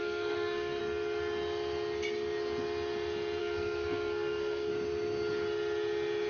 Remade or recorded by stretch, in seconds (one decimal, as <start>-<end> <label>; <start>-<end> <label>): 0.0-0.8 remade; 0.8-3.4 recorded; 3.4-4.7 remade; 4.7-6.3 recorded